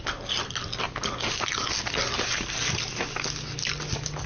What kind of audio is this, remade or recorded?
recorded